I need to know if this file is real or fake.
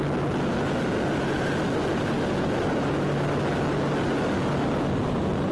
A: real